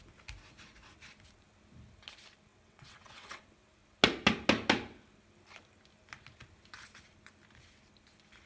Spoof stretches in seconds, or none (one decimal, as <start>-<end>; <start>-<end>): 2.5-3.4